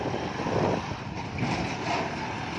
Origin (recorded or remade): recorded